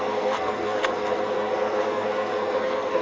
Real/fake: fake